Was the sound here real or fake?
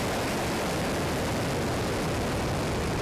real